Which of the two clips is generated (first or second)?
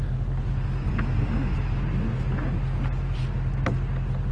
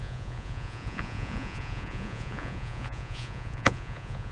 second